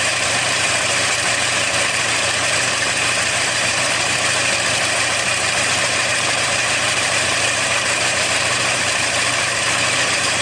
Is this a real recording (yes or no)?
no